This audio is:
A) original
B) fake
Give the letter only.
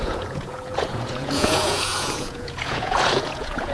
B